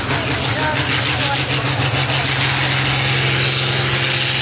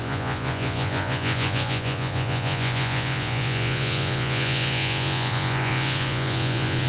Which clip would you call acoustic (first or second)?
first